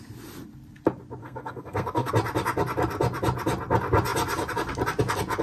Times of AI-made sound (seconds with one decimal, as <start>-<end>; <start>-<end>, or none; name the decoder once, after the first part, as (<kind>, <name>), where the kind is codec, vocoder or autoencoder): 1.2-2.1 (codec, SNAC)